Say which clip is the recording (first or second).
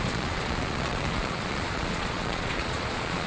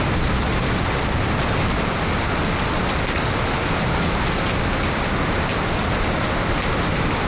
second